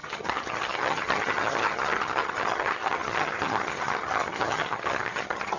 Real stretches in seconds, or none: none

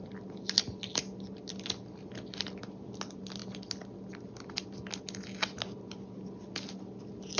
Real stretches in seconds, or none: 0.0-7.4

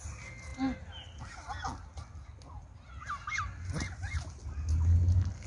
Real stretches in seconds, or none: 0.0-5.5

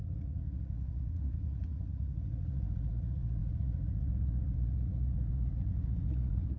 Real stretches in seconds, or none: none